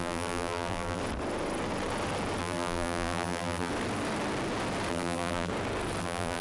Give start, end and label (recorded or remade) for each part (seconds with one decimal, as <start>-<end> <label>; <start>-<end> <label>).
0.0-1.0 remade; 1.0-2.4 recorded; 2.4-3.7 remade; 3.7-4.9 recorded; 4.9-5.5 remade; 5.5-6.0 recorded; 6.0-6.4 remade